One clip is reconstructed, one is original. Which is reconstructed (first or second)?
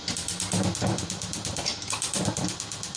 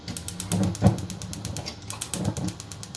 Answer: first